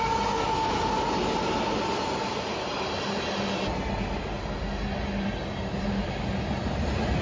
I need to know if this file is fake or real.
real